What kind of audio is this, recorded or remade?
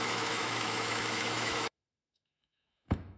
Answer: remade